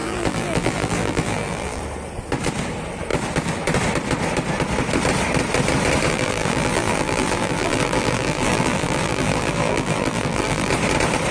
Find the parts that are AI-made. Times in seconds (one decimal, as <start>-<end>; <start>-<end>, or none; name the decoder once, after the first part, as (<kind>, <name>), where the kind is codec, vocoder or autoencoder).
0.0-1.8 (vocoder, BigVGAN v2); 6.1-10.7